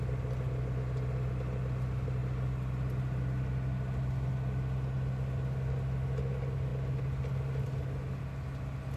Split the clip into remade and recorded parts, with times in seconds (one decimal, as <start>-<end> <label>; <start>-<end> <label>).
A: 0.0-9.0 recorded